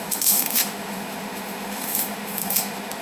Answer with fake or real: fake